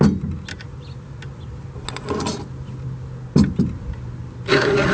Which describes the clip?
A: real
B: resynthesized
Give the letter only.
A